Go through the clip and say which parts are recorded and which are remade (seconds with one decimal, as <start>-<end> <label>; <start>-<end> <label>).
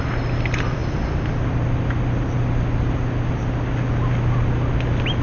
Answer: 0.0-5.2 recorded